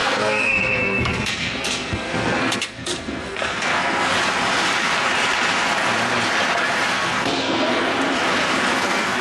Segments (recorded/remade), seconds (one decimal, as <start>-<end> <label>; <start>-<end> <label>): 0.0-4.1 remade; 4.1-6.9 recorded; 6.9-7.9 remade; 7.9-8.7 recorded; 8.7-9.2 remade